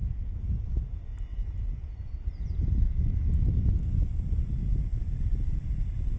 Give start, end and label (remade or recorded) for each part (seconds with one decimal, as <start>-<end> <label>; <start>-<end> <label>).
0.0-6.2 recorded